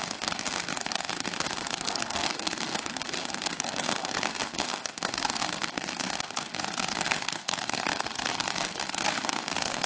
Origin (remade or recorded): remade